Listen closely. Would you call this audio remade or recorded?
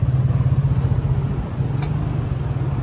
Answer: recorded